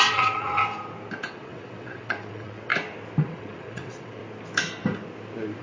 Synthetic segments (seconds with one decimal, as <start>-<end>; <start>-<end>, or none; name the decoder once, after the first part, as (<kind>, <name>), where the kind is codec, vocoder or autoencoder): 0.0-0.6 (vocoder, WaveNeXt); 1.3-2.7; 3.2-4.2